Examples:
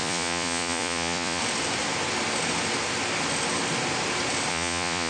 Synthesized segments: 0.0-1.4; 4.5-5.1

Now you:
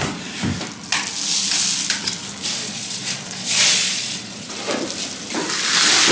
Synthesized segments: 2.6-4.5

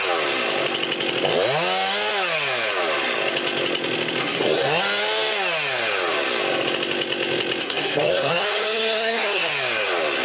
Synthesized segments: 4.2-4.8; 7.6-9.5

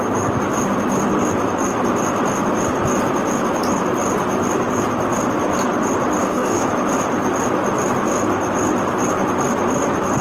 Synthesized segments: 6.2-6.7

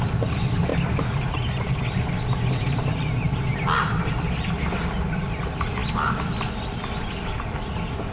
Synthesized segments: none

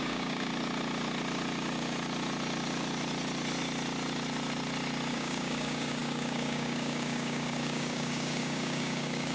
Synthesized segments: 0.0-0.5; 5.1-9.3

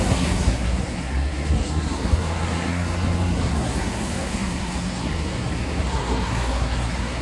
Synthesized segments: 0.0-7.2